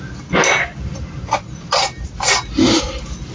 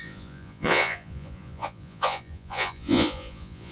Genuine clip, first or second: first